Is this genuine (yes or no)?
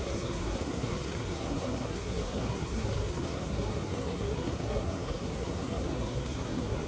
no